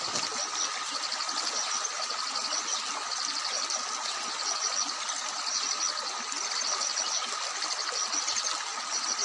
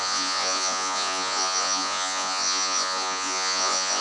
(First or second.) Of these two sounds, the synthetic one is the second